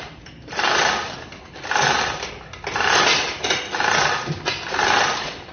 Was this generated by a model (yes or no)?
no